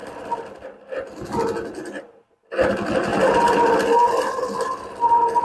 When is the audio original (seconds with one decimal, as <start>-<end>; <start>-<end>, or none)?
0.0-5.4